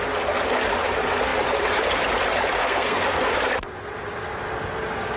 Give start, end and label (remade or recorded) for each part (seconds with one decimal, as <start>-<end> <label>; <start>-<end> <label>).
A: 0.0-2.6 recorded; 2.6-3.3 remade; 3.3-5.2 recorded